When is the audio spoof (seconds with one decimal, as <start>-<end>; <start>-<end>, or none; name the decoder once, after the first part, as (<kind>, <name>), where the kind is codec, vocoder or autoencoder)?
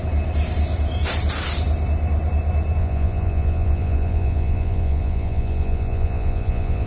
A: 2.8-6.9 (vocoder, Vocos)